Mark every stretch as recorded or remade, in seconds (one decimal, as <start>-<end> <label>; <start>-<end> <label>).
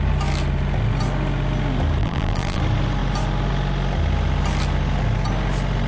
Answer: 0.0-2.0 recorded; 2.0-2.6 remade; 2.6-5.9 recorded